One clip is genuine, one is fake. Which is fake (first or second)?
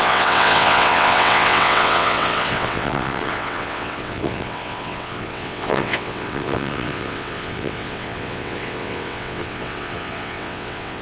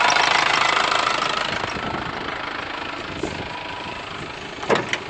first